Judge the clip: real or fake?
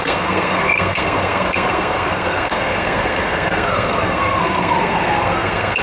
fake